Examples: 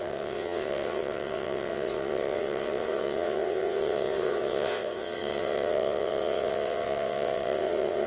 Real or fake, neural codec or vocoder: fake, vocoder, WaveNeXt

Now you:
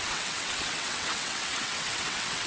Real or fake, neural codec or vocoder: fake, vocoder, WaveNeXt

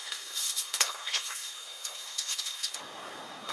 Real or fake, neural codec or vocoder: fake, codec, SNAC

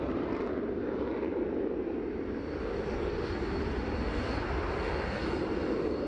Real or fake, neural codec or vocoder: real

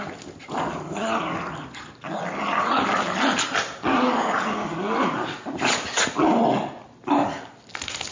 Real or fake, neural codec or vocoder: real